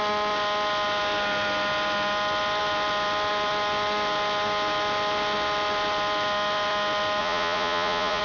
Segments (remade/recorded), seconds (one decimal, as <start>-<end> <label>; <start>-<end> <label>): 0.0-7.2 recorded; 7.2-8.2 remade